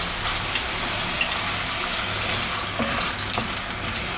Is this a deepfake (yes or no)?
no